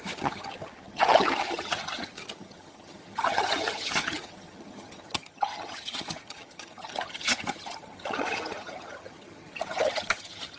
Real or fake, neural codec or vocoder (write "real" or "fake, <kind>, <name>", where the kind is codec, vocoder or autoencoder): fake, vocoder, HiFi-GAN